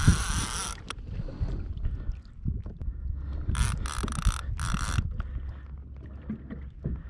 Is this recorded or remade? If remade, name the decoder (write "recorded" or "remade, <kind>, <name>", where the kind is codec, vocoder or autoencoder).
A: recorded